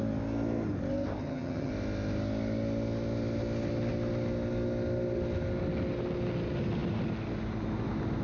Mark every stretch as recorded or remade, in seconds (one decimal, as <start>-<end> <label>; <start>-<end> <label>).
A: 0.0-1.2 recorded; 1.2-1.7 remade; 1.7-8.2 recorded